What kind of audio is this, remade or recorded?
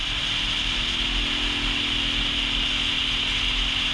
recorded